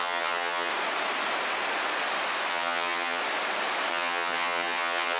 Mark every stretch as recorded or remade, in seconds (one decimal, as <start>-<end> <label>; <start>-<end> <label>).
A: 0.0-0.7 remade; 0.7-2.5 recorded; 2.5-3.2 remade; 3.2-3.9 recorded; 3.9-5.2 remade